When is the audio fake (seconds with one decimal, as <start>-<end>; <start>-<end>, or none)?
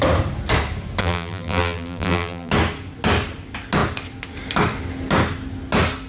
1.0-2.5